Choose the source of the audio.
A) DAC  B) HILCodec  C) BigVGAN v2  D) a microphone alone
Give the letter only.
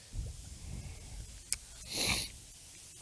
D